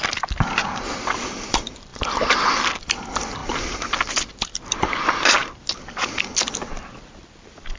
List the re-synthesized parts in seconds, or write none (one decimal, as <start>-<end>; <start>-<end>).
0.0-3.4; 4.1-5.4; 7.1-7.8